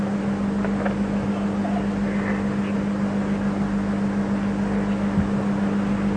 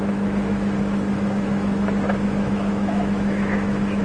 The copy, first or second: second